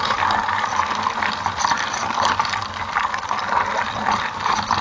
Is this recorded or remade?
recorded